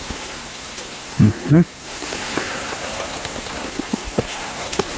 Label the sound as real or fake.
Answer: fake